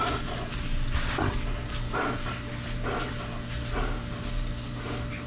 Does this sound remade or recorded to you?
recorded